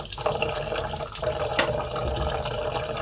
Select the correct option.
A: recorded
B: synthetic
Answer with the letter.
A